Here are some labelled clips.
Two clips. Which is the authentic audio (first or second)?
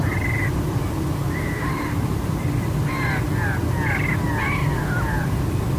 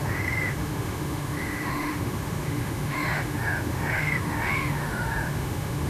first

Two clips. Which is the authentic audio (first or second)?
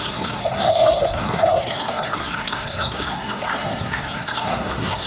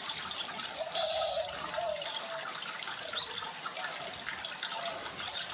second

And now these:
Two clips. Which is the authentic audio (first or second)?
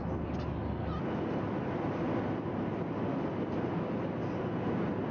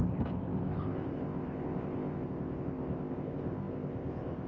first